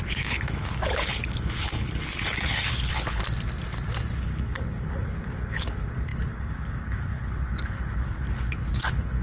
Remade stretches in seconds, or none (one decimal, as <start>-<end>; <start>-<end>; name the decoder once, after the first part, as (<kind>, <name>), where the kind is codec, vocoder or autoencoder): 0.0-3.2 (codec, HILCodec); 4.2-9.2